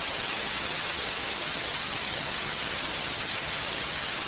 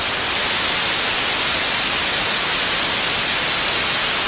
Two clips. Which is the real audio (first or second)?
second